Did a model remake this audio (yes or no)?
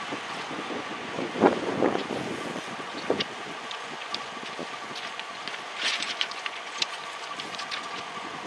yes